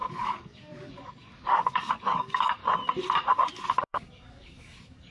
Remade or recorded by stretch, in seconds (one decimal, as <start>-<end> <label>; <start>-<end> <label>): 0.0-2.6 remade; 2.6-3.8 recorded; 3.8-5.1 remade